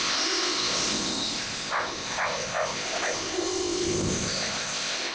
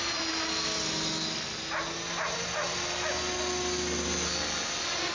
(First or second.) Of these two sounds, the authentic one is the second